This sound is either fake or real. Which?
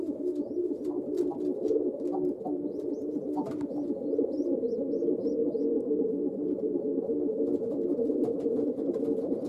real